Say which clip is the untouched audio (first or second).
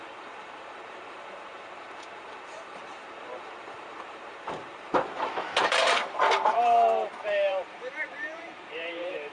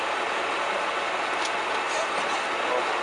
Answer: second